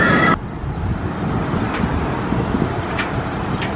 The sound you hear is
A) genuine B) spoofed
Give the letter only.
A